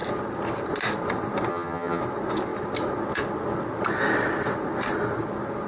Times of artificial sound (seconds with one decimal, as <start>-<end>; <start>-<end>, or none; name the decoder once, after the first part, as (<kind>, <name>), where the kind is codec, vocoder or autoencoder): 1.5-2.0 (vocoder, HiFi-GAN)